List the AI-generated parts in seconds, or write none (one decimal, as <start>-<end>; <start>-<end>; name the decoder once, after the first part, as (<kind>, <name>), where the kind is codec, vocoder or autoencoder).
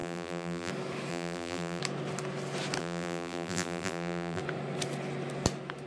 0.0-0.7 (vocoder, BigVGAN v2); 1.1-1.8; 2.8-4.4